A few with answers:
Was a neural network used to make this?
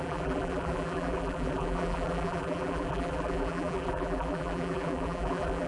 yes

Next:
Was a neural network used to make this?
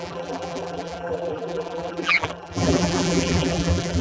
yes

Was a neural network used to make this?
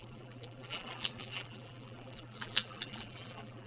yes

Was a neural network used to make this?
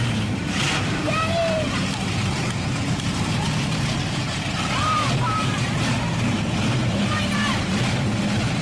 yes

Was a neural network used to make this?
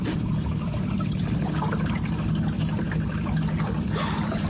no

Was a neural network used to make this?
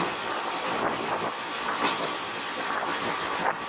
yes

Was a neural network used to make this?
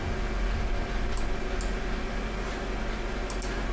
no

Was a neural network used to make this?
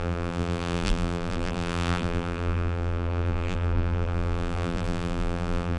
yes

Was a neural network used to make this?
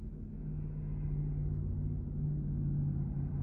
no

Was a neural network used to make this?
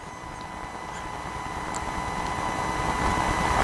no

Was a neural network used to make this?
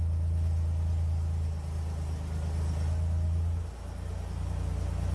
no